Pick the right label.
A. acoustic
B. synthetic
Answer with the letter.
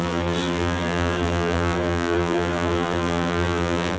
B